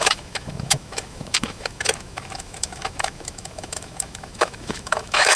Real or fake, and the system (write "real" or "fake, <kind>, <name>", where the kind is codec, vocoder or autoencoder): fake, autoencoder, DAC-VAE